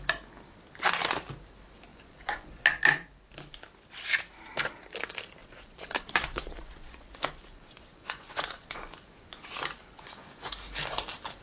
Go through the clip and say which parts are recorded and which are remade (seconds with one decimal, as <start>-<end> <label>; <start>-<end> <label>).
0.0-1.9 recorded; 1.9-2.6 remade; 2.6-5.4 recorded; 5.4-10.5 remade; 10.5-11.4 recorded